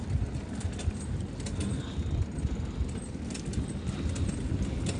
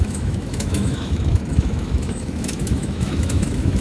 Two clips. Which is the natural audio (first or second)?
first